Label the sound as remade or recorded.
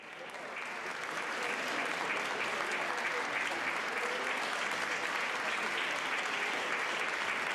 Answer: recorded